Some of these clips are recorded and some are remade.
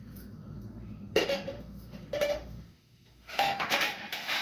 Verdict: remade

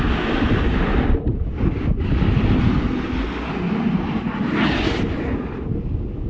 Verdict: recorded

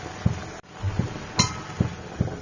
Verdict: recorded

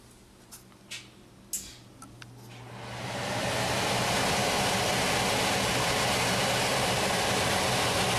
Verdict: recorded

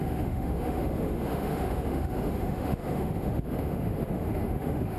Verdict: remade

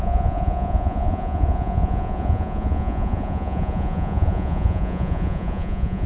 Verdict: remade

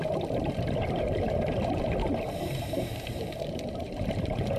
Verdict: remade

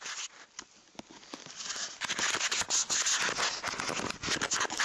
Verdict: recorded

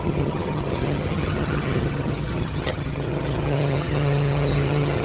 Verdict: remade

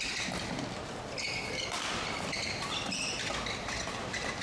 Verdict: recorded